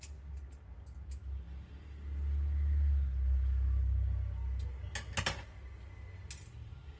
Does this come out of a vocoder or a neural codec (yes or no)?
no